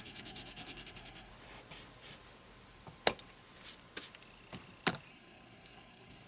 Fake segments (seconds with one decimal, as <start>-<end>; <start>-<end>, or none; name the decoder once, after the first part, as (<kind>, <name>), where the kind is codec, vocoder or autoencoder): 0.0-1.3 (codec, SNAC); 5.1-6.3